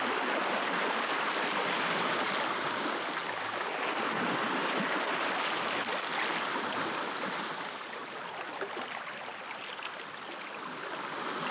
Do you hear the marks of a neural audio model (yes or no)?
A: no